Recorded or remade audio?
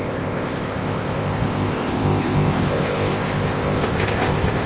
remade